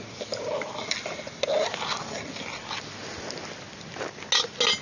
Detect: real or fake real